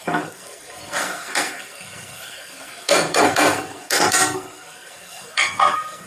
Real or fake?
fake